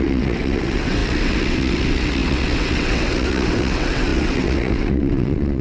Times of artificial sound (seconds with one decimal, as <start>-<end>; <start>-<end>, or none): 0.0-5.6